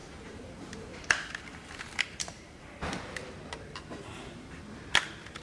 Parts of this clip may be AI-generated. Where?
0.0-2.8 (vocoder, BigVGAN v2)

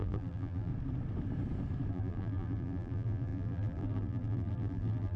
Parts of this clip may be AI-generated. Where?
0.0-0.7 (vocoder, BigVGAN v2); 1.9-5.2

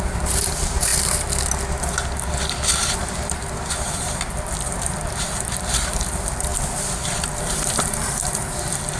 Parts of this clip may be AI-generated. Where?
0.0-0.9 (vocoder, BigVGAN v2); 3.7-6.5; 7.4-9.0

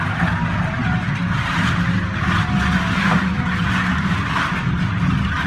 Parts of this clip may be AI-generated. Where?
none

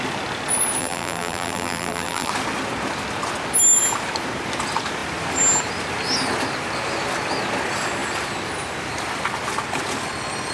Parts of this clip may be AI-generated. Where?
0.8-2.3 (vocoder, BigVGAN v2)

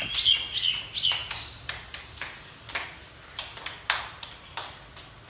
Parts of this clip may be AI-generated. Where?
none